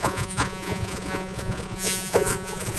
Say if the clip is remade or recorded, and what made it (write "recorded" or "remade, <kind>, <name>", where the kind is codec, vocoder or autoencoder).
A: remade, vocoder, Vocos